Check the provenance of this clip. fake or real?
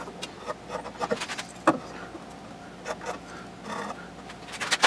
real